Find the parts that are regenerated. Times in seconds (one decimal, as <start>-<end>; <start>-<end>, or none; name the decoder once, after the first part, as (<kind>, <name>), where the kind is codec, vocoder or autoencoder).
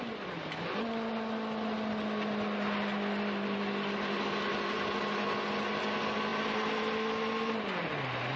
none